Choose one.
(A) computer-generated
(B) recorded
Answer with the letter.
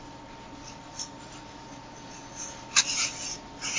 B